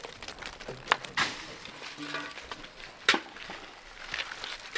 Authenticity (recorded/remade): recorded